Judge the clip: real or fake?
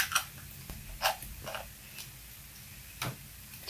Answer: real